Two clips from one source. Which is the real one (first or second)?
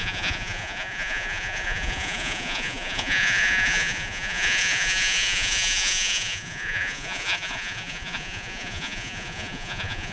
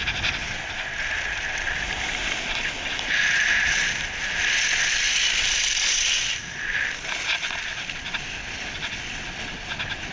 second